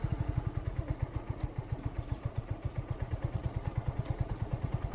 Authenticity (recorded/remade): remade